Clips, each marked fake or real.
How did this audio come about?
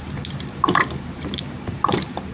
real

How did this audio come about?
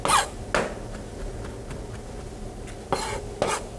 real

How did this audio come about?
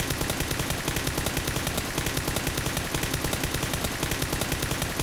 real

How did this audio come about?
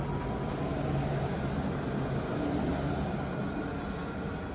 real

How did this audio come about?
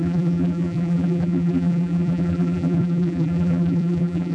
fake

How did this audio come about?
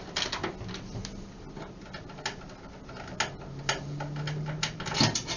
real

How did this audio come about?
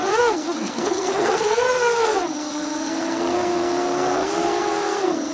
fake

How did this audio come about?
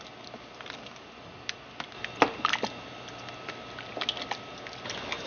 real